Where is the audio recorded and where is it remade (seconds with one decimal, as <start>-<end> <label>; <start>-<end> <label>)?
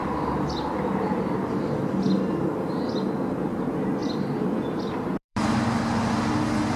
0.0-1.5 remade; 1.5-4.0 recorded; 4.0-6.3 remade; 6.3-6.8 recorded